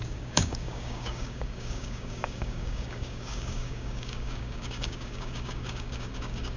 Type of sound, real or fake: fake